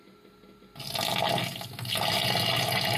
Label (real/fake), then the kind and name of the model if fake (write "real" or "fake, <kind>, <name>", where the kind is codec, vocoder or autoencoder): real